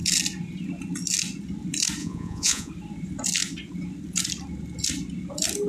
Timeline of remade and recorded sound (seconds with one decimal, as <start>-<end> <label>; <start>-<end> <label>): 0.0-2.0 recorded; 2.0-2.7 remade; 2.7-5.7 recorded